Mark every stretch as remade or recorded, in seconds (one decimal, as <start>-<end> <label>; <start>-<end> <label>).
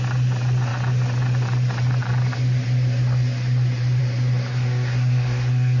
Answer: 0.0-4.5 recorded; 4.5-5.8 remade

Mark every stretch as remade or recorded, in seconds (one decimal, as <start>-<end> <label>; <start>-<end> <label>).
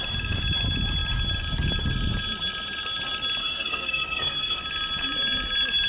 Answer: 0.0-3.4 recorded; 3.4-4.6 remade; 4.6-5.9 recorded